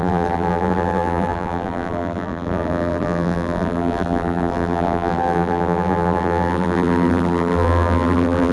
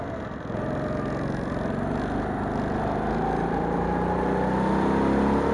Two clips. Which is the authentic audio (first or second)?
second